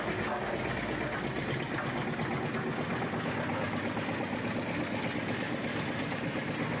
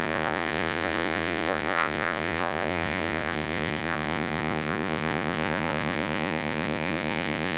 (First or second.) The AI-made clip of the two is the second